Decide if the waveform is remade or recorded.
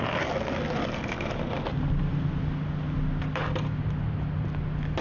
recorded